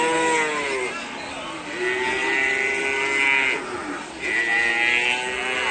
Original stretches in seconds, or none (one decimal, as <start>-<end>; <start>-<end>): 0.0-2.2; 2.8-3.8; 4.7-5.7